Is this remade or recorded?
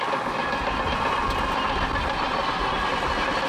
recorded